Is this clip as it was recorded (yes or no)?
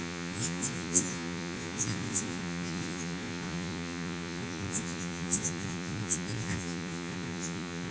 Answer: no